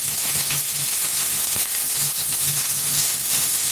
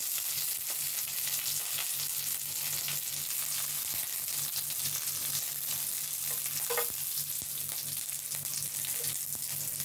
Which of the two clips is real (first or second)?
second